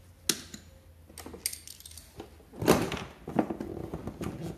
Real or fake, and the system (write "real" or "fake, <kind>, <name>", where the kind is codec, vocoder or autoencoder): real